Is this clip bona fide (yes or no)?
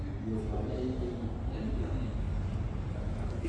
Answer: yes